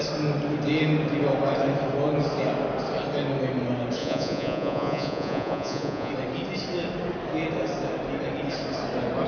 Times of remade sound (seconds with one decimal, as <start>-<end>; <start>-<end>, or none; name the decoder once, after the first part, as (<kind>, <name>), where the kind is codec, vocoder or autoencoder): 4.0-6.1 (vocoder, Vocos)